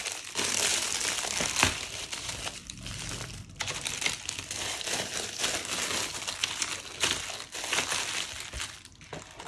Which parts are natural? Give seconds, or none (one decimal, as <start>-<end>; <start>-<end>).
0.0-0.7; 5.4-9.5

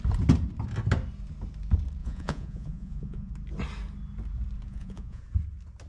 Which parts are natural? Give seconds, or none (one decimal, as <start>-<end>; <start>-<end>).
0.0-2.0; 3.3-4.7; 5.2-5.9